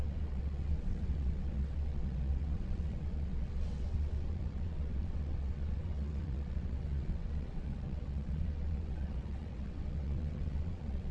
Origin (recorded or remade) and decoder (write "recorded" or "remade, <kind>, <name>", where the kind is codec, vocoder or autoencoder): remade, vocoder, WaveNeXt